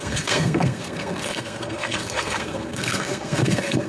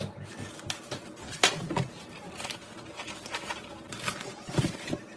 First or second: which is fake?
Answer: first